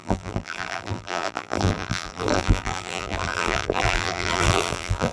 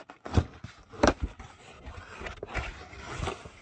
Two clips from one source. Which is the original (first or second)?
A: second